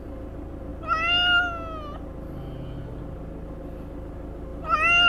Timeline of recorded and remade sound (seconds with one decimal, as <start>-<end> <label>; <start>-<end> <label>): 0.0-5.1 recorded